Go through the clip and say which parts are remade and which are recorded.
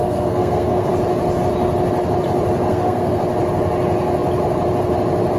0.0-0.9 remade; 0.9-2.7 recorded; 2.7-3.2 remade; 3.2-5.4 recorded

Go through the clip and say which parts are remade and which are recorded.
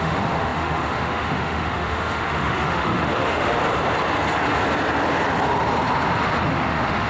0.0-3.6 remade; 3.6-6.5 recorded; 6.5-7.1 remade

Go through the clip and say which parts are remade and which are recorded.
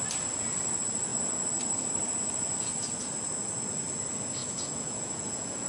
0.0-4.4 recorded; 4.4-5.7 remade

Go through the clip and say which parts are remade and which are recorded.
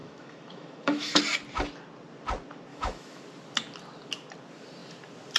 0.0-1.2 remade; 1.2-2.7 recorded; 2.7-3.2 remade; 3.2-5.4 recorded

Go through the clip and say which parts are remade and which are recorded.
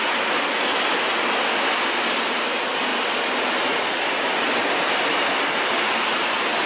0.0-6.7 recorded